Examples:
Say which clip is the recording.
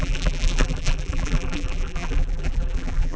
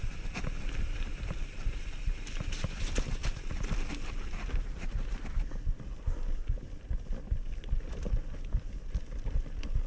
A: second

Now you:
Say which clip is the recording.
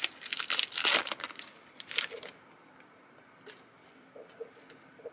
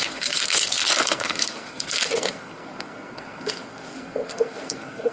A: first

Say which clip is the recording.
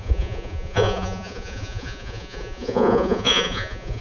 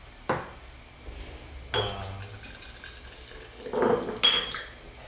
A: second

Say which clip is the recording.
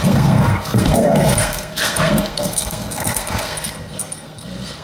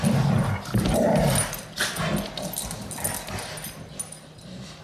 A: second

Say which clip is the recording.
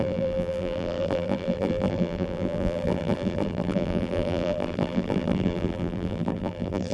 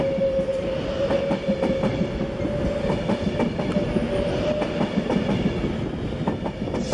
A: second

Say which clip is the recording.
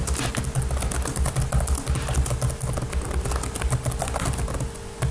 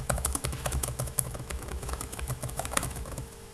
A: first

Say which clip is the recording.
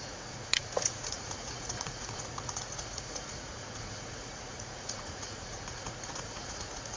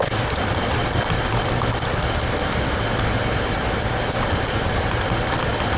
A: second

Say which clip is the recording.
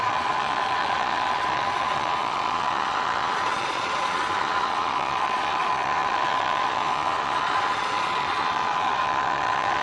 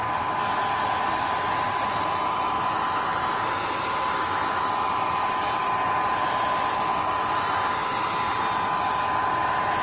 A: second